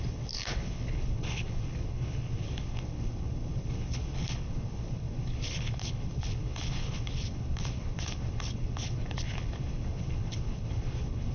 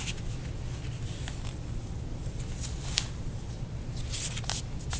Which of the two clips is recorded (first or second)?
second